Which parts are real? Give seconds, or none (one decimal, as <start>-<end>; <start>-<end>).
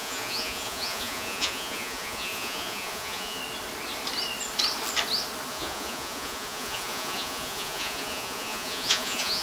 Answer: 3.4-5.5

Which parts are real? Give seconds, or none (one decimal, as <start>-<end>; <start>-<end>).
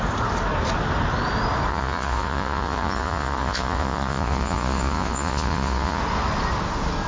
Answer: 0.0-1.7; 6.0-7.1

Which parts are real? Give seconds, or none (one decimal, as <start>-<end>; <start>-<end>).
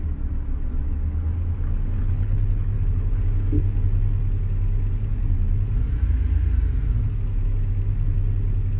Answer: 0.0-2.0; 3.2-8.8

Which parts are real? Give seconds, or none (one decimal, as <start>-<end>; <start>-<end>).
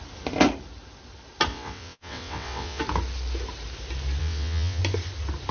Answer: 0.0-1.5; 2.8-4.2; 4.8-5.5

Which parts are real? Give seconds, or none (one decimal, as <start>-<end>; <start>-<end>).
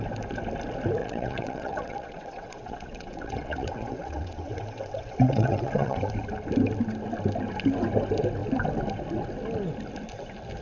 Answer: 0.0-1.0; 6.1-10.6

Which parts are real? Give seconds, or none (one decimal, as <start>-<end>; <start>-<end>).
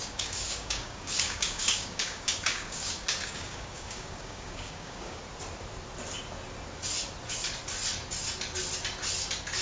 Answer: 5.2-9.6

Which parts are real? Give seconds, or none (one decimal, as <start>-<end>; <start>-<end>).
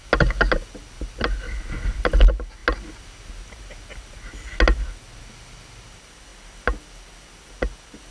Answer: 0.0-8.1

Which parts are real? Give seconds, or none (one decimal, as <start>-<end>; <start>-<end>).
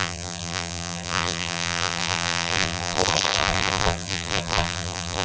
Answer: none